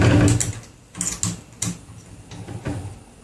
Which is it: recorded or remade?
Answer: recorded